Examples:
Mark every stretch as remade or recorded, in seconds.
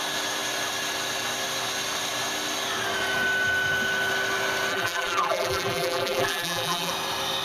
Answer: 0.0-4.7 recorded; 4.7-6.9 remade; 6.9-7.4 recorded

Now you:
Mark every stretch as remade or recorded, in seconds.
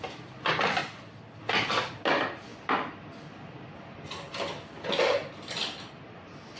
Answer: 0.0-6.6 recorded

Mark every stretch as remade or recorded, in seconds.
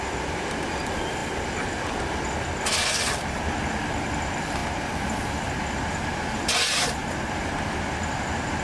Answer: 0.0-8.6 recorded